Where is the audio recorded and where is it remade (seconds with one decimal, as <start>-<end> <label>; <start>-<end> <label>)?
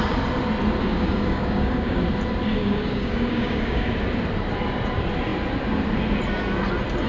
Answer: 0.0-0.8 recorded; 0.8-2.0 remade; 2.0-2.6 recorded; 2.6-3.9 remade; 3.9-7.1 recorded